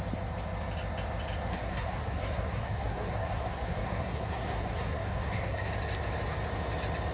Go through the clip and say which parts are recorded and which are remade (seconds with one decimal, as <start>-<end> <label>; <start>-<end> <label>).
0.0-1.5 recorded; 1.5-5.7 remade; 5.7-7.1 recorded